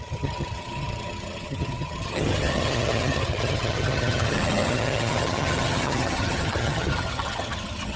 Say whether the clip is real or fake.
fake